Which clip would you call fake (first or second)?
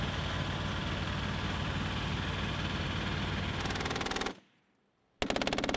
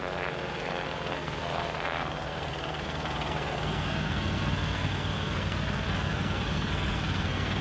second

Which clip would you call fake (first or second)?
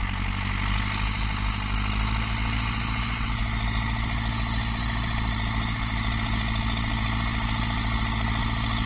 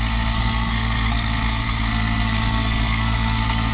second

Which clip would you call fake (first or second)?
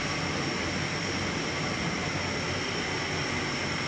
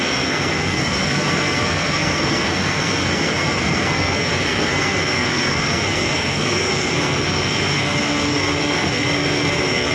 second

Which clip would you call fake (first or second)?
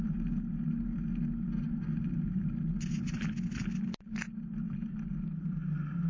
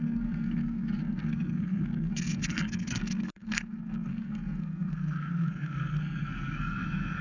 second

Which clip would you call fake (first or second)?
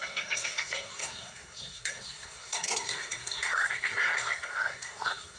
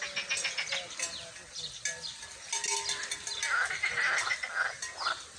first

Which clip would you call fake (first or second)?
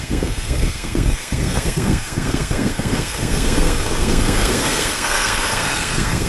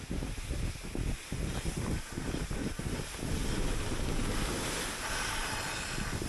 first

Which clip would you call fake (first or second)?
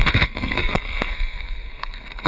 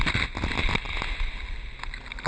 first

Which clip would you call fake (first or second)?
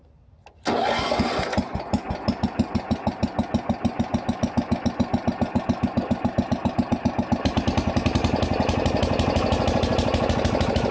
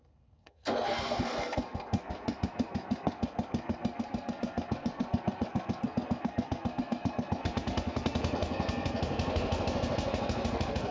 second